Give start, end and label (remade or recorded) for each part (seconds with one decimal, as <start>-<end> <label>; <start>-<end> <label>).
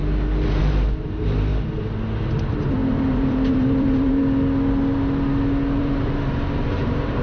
0.0-0.6 recorded; 0.6-1.5 remade; 1.5-2.4 recorded; 2.4-4.2 remade; 4.2-5.8 recorded; 5.8-7.2 remade